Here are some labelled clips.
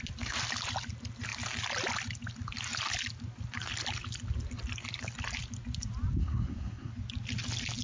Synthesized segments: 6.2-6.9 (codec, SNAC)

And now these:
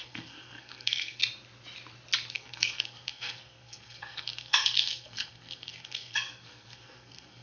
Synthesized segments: 0.0-1.2 (codec, SNAC); 2.3-7.4

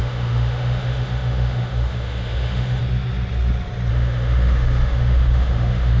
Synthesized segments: 0.0-2.8 (autoencoder, DAC-VAE); 3.9-6.0

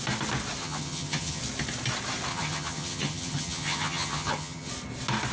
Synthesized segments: 0.6-1.4 (vocoder, HiFi-GAN); 2.3-4.7

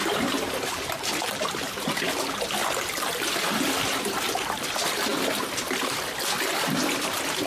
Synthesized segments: none

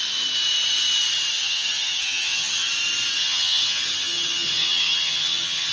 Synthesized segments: 1.3-2.7 (vocoder, HiFi-GAN); 3.1-5.7